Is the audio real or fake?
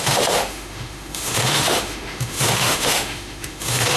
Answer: fake